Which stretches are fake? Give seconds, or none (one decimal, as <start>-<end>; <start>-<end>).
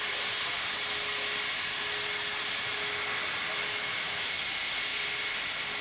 3.5-4.4